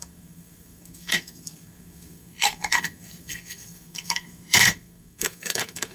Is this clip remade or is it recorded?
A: remade